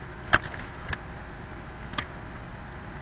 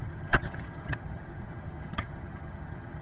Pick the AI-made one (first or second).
second